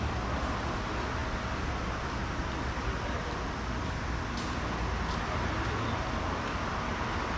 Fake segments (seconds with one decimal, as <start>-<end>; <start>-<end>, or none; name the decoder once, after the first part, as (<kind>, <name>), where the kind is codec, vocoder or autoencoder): none